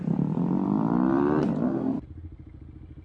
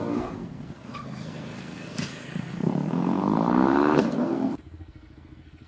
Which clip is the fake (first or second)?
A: second